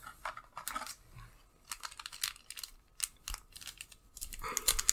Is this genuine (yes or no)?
yes